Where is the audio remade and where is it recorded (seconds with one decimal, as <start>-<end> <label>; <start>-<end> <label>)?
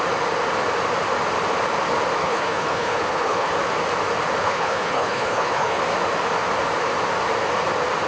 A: 0.0-2.2 recorded; 2.2-3.5 remade; 3.5-4.4 recorded; 4.4-5.8 remade; 5.8-8.1 recorded